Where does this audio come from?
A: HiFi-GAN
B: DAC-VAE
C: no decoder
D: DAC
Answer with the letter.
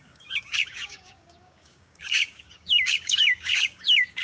D